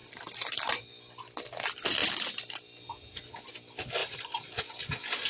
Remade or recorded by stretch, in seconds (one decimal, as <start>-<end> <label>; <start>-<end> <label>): 0.0-0.9 remade; 0.9-4.0 recorded; 4.0-4.6 remade; 4.6-5.3 recorded